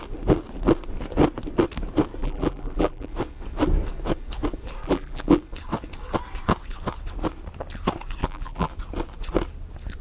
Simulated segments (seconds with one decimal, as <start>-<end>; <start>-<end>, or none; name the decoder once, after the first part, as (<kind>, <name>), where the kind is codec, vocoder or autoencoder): 2.2-3.1 (vocoder, BigVGAN v2); 4.8-5.4; 8.2-8.7